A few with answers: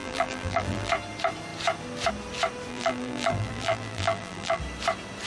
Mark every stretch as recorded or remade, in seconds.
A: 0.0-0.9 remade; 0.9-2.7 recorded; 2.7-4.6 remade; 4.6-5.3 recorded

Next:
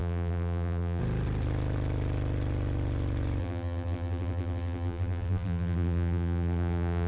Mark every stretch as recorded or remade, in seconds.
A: 0.0-1.0 remade; 1.0-3.4 recorded; 3.4-7.1 remade

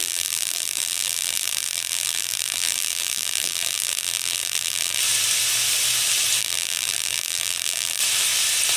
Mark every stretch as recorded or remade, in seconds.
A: 0.0-5.0 remade; 5.0-6.4 recorded; 6.4-8.0 remade; 8.0-8.8 recorded

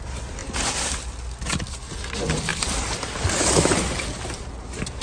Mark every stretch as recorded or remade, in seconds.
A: 0.0-0.4 recorded; 0.4-1.0 remade; 1.0-2.5 recorded; 2.5-3.7 remade; 3.7-5.0 recorded